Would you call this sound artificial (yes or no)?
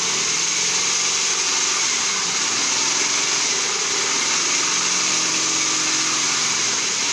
no